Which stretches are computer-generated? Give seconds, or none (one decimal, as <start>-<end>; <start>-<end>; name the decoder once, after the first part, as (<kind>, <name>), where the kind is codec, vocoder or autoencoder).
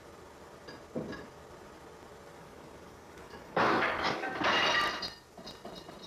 2.3-4.4 (codec, DAC)